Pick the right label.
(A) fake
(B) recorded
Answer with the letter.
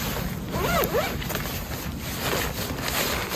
B